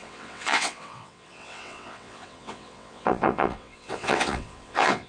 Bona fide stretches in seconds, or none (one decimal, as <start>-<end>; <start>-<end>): none